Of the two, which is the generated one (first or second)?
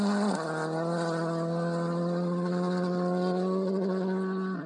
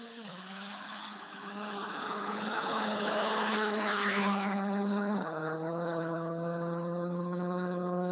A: second